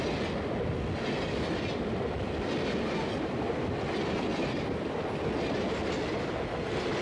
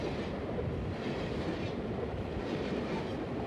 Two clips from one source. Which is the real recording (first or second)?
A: first